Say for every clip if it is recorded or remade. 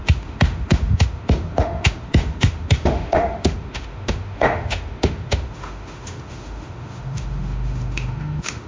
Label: remade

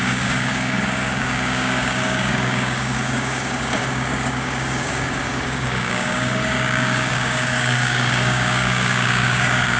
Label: remade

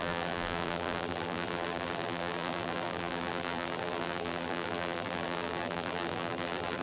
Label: remade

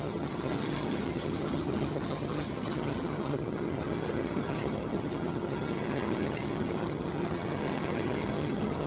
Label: remade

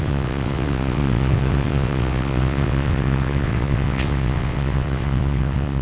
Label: remade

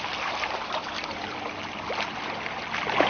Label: recorded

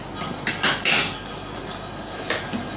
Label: recorded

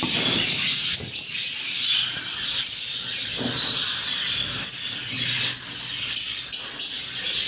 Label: recorded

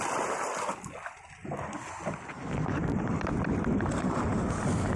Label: recorded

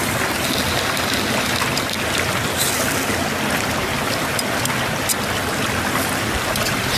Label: recorded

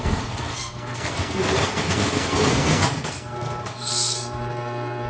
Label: remade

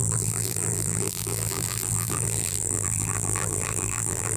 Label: remade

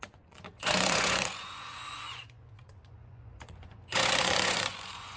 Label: remade